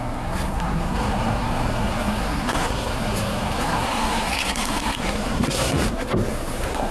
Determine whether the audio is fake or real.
fake